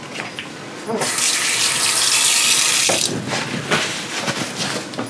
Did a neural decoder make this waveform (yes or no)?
no